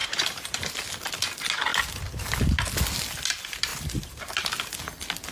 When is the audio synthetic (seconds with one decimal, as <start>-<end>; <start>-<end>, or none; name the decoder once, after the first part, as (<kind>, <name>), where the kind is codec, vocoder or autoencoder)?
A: 0.0-0.6 (vocoder, BigVGAN v2); 3.7-4.2